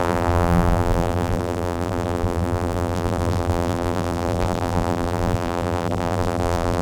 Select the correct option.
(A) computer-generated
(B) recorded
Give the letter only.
A